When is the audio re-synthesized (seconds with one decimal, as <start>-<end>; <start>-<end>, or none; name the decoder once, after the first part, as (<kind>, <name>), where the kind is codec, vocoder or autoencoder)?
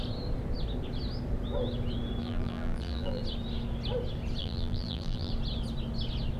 2.2-3.2 (vocoder, BigVGAN v2); 4.4-5.3